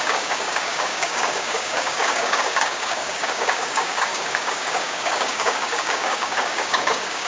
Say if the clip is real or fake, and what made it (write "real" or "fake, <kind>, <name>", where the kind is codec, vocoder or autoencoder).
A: fake, codec, DAC